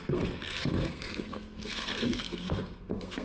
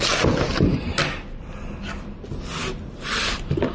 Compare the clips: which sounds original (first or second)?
second